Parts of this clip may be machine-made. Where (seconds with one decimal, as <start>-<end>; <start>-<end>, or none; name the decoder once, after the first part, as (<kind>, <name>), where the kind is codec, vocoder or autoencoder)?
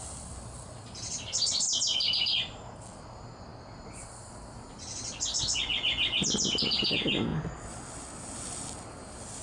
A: none